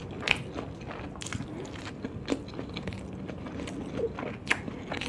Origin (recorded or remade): recorded